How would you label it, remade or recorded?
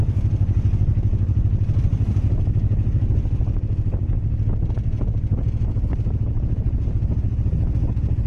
recorded